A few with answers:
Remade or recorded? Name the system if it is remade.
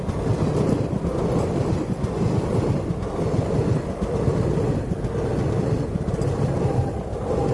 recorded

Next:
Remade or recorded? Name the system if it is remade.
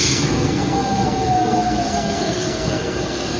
remade, codec, SNAC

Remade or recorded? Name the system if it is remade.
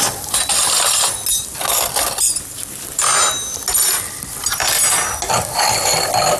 recorded